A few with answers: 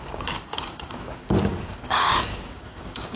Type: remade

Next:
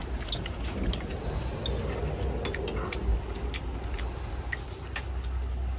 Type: recorded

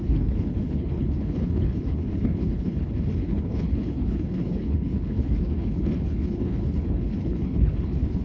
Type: remade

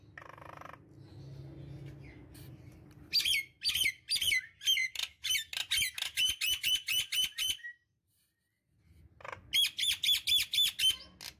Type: recorded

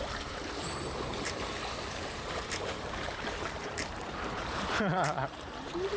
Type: remade